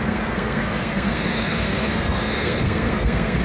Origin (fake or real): fake